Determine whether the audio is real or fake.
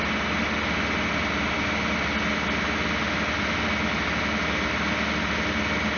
real